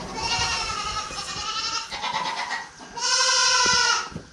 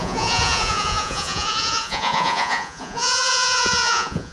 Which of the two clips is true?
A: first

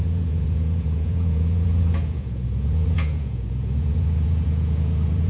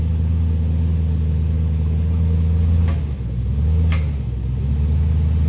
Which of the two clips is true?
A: second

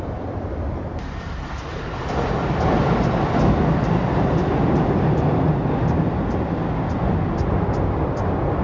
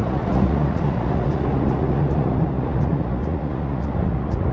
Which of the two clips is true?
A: first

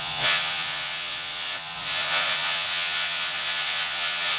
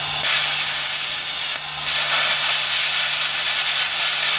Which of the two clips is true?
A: second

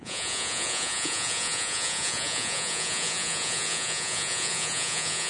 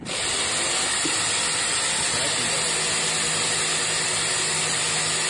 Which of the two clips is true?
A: second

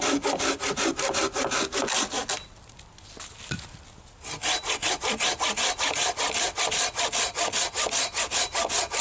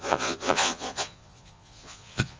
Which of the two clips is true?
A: first